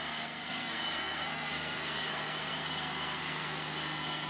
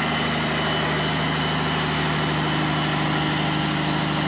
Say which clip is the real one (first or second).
second